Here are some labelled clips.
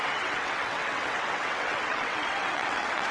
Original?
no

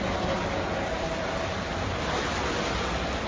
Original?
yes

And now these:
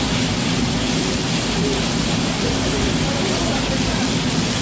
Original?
yes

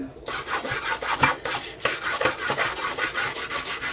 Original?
yes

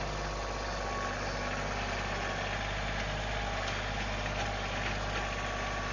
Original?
yes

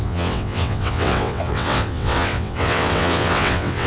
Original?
no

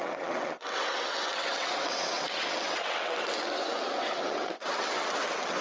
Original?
no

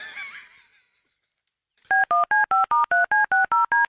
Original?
yes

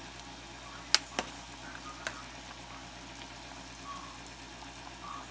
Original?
yes